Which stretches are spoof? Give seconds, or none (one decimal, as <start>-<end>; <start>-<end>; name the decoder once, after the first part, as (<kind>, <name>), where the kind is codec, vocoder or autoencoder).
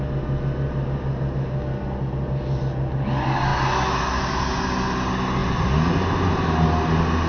none